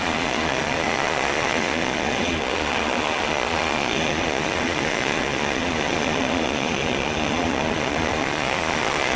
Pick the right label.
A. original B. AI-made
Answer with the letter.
B